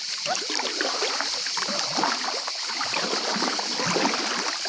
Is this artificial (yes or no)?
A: yes